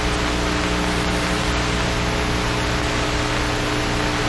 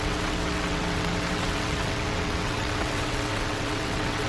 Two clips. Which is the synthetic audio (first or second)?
second